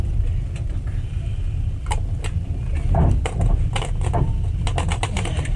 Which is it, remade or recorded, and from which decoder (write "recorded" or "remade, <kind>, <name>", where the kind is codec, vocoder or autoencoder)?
recorded